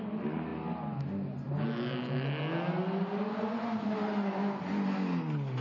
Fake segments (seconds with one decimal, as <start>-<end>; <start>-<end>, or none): none